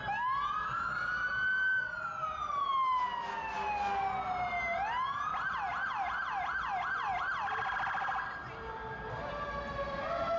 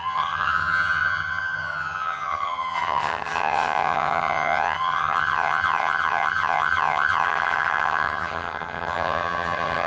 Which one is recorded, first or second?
first